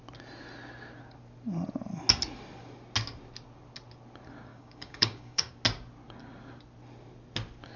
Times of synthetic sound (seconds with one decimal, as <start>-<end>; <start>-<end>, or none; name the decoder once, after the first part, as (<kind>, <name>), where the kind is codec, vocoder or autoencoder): 4.5-5.5 (codec, DAC)